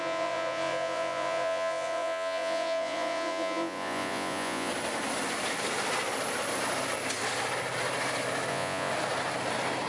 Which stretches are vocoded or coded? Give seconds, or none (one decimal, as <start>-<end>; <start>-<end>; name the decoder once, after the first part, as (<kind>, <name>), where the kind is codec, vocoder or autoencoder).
0.0-4.7 (vocoder, Vocos); 8.5-8.9